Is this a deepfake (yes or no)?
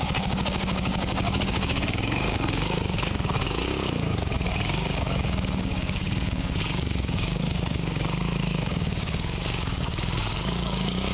yes